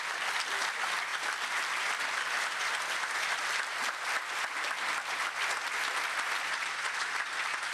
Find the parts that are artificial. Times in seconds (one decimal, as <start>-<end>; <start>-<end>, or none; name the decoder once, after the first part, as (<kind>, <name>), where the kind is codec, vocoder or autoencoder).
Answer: none